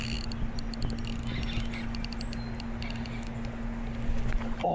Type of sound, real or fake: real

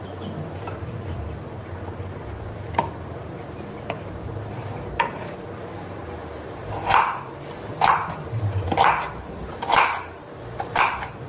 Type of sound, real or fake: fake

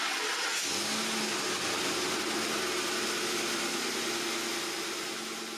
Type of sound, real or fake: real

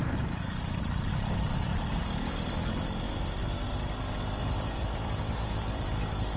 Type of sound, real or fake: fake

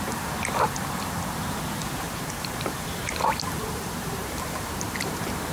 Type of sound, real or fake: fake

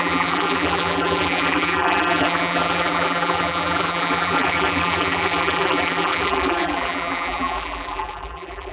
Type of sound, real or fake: fake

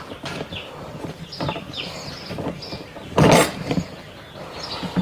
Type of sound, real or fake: real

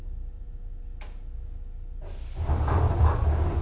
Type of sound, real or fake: real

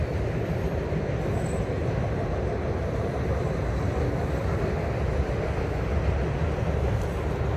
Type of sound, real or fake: real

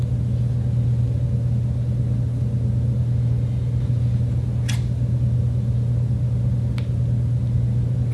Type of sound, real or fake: real